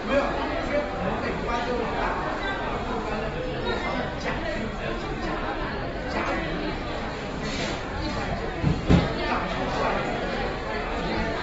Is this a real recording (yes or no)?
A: yes